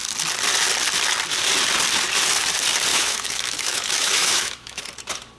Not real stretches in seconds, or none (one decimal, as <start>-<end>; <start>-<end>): 2.9-4.8